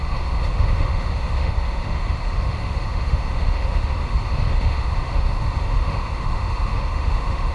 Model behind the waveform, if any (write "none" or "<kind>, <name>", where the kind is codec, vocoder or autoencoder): autoencoder, DAC-VAE